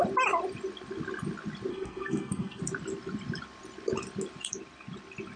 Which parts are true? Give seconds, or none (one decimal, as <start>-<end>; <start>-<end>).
0.0-1.7; 2.6-5.4